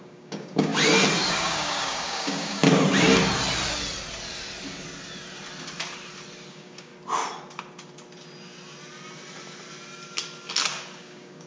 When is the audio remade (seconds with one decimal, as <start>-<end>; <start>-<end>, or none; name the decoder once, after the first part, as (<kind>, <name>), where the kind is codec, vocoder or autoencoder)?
0.0-0.7 (codec, DAC); 1.3-2.6; 6.5-6.9; 11.0-11.5